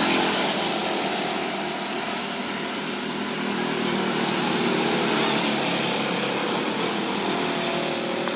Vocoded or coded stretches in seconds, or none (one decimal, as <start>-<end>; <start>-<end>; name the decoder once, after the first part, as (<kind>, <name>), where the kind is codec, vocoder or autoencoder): none